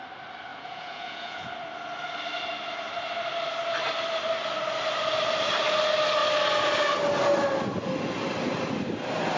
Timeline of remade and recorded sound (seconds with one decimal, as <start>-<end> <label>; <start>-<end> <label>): 0.0-0.5 recorded; 0.5-1.5 remade; 1.5-9.4 recorded